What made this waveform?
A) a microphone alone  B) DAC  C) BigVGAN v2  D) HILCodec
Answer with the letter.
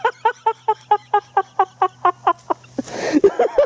A